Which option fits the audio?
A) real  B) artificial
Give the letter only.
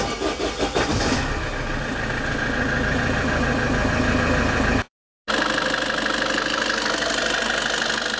A